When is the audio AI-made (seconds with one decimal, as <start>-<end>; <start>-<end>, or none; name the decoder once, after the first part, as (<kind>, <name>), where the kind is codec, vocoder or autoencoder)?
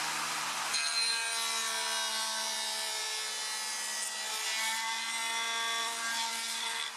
0.0-0.8 (vocoder, BigVGAN v2); 2.1-3.4; 4.3-5.2; 5.8-7.0